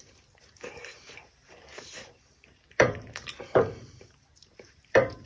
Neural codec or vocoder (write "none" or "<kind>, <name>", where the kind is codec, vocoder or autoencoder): vocoder, BigVGAN v2